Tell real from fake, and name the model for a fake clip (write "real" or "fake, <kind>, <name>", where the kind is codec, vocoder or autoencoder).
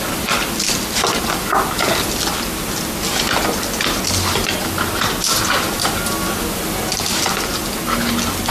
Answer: real